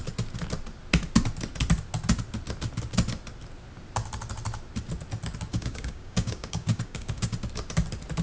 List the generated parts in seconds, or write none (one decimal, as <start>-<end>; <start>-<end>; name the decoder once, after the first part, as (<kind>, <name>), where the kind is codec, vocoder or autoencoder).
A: 5.5-7.3 (codec, DAC)